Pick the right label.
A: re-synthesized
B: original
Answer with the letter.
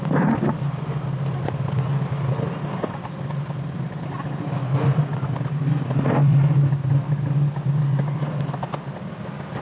B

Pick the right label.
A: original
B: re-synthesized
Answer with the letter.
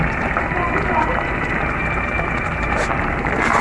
B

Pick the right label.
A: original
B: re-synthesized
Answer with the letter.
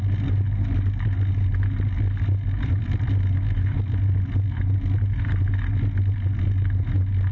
A